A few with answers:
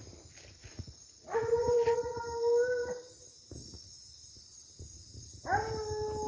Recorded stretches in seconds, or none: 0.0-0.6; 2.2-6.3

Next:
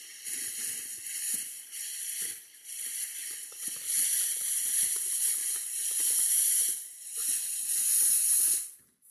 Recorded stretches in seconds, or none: 7.3-8.4

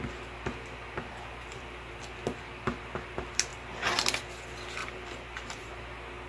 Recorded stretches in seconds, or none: 0.0-1.1; 2.0-4.8; 5.8-6.3

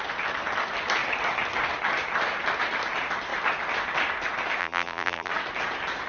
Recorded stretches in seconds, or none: 0.0-4.6; 5.3-6.1

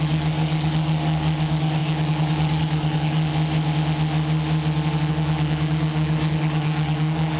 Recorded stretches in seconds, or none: 3.3-5.1

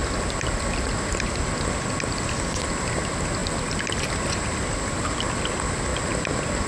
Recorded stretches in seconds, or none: 0.0-3.4; 5.5-5.9